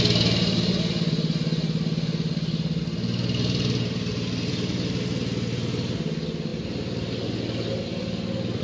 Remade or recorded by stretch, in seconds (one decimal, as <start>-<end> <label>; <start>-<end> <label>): 0.0-8.6 recorded